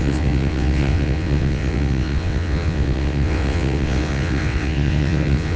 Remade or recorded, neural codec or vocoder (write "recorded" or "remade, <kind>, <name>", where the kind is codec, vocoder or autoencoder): remade, vocoder, WaveNeXt